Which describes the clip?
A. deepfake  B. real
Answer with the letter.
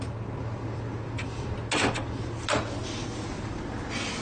B